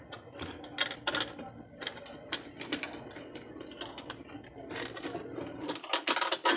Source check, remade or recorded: recorded